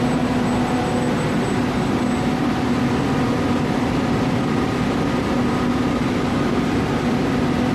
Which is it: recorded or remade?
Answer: recorded